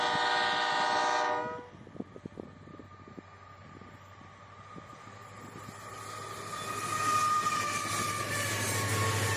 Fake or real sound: real